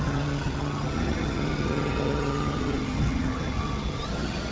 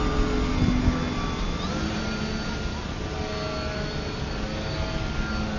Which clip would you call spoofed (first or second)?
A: first